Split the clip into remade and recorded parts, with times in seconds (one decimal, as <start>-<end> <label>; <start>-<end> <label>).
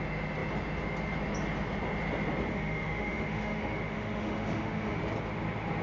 0.0-2.5 recorded; 2.5-5.0 remade; 5.0-5.8 recorded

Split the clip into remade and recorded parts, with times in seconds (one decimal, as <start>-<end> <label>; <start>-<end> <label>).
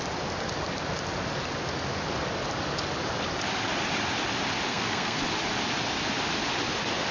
0.0-4.7 recorded; 4.7-5.2 remade; 5.2-7.1 recorded